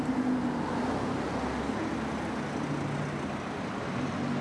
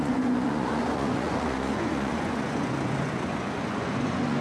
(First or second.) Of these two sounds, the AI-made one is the second